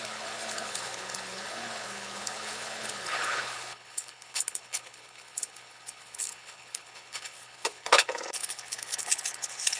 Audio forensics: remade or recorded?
remade